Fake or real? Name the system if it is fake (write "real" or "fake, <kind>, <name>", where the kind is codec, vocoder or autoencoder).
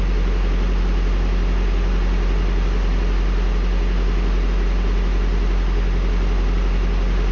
real